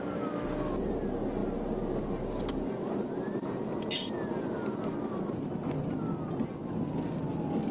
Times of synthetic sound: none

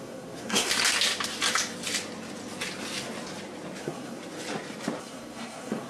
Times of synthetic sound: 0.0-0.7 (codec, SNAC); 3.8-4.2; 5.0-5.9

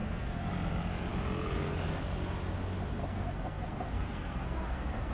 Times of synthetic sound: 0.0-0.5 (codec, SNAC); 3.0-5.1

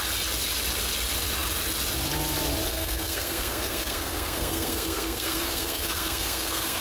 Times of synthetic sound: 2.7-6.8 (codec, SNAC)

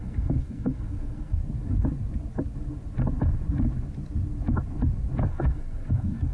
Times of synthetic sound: 0.0-1.4 (codec, SNAC); 5.2-6.3

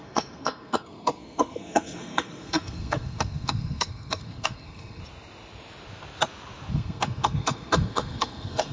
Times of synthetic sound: 0.0-5.0 (codec, SNAC); 6.7-8.7

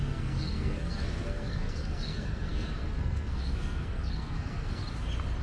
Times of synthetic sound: 0.0-4.8 (codec, SNAC)